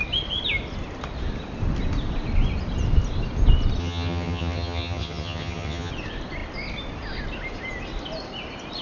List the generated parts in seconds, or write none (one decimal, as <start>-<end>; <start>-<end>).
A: 3.8-5.9